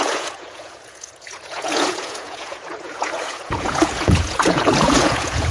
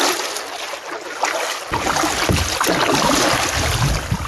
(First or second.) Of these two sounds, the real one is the second